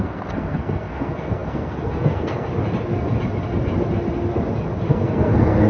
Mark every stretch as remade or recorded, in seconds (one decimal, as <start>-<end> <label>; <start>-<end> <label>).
0.0-2.5 remade; 2.5-4.9 recorded; 4.9-5.7 remade